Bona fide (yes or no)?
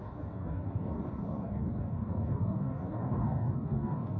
no